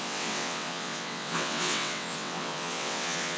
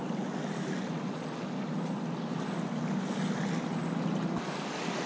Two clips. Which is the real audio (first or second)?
second